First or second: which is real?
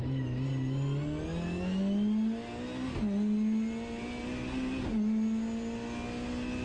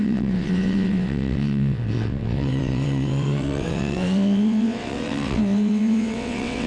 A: first